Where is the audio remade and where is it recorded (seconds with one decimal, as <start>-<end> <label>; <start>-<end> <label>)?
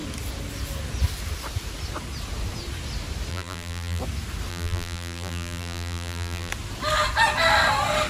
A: 0.0-3.3 recorded; 3.3-4.0 remade; 4.0-4.5 recorded; 4.5-6.5 remade; 6.5-8.1 recorded